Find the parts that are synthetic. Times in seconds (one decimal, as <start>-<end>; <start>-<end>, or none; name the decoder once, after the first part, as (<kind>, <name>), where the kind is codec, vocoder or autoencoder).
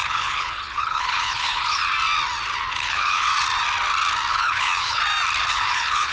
0.0-1.8 (codec, HILCodec); 2.7-3.3; 4.3-5.0; 5.5-6.1